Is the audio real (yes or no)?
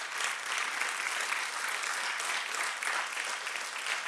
yes